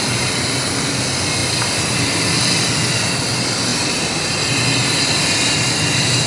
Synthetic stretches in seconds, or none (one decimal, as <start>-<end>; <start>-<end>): none